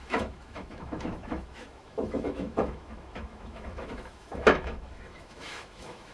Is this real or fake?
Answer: fake